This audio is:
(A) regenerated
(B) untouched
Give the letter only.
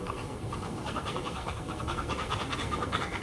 A